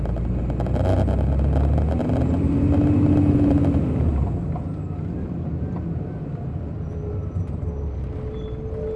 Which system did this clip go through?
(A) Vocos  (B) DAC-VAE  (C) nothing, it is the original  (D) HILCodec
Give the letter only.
C